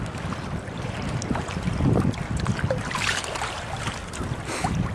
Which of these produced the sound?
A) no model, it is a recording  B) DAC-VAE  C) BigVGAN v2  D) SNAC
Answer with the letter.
A